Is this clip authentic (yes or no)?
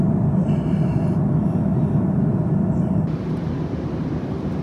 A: yes